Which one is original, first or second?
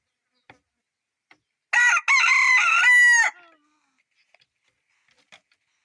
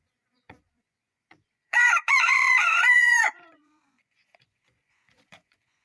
first